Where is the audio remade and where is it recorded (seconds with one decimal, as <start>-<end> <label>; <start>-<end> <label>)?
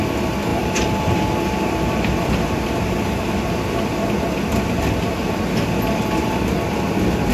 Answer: 0.0-0.5 recorded; 0.5-3.2 remade; 3.2-7.3 recorded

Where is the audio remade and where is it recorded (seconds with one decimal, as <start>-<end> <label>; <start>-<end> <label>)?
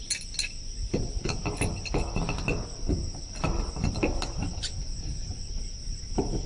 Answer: 0.0-3.4 recorded; 3.4-5.3 remade; 5.3-6.0 recorded; 6.0-6.5 remade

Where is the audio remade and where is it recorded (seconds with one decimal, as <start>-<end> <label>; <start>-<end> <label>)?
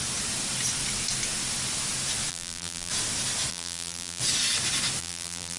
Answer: 0.0-2.3 recorded; 2.3-2.9 remade; 2.9-3.5 recorded; 3.5-4.2 remade; 4.2-5.0 recorded; 5.0-5.6 remade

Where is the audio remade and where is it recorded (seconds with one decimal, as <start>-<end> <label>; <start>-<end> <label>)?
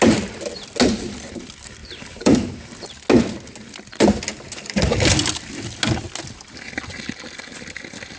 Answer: 0.0-1.8 recorded; 1.8-2.6 remade; 2.6-8.2 recorded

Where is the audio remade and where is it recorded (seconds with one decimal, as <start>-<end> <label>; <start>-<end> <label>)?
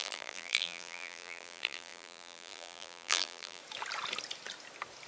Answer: 0.0-3.6 remade; 3.6-5.1 recorded